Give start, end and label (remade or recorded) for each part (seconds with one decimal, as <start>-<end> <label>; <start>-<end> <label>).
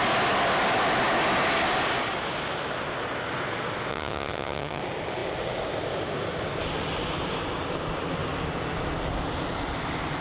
0.0-3.9 recorded; 3.9-4.8 remade; 4.8-10.2 recorded